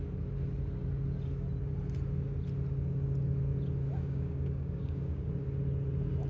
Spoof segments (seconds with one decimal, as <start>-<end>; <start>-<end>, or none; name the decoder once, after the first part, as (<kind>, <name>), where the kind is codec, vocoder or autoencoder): 4.0-5.3 (codec, DAC)